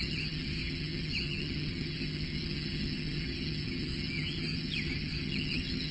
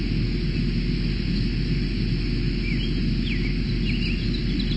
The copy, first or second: first